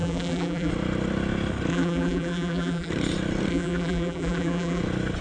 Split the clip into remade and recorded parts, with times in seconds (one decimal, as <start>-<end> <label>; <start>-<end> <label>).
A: 0.0-0.7 remade; 0.7-1.7 recorded; 1.7-2.9 remade; 2.9-3.5 recorded; 3.5-4.8 remade; 4.8-5.2 recorded